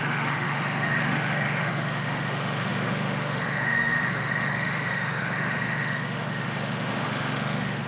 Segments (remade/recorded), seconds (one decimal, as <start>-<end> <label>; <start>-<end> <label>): 0.0-7.9 remade